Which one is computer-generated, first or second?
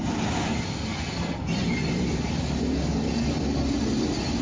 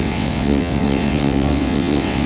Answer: second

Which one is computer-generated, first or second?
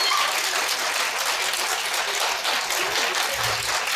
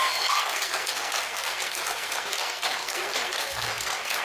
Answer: second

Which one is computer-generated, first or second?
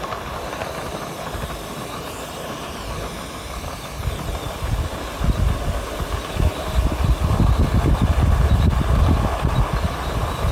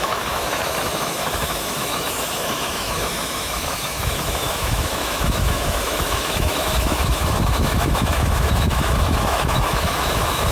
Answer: second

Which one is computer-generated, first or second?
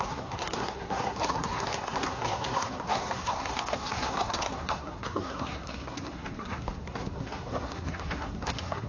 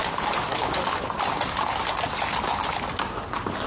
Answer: first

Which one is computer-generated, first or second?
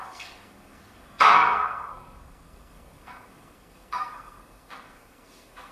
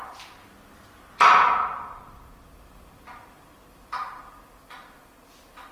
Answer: first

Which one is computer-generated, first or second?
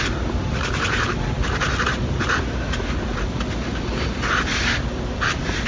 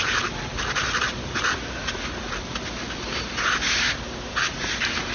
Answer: first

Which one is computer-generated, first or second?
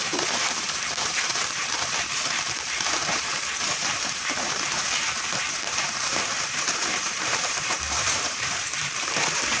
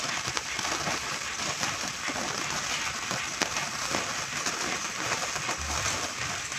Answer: first